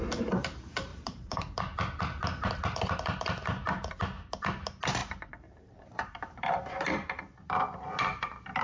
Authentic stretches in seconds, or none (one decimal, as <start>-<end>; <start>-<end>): 0.0-0.9; 1.6-5.0; 7.2-8.6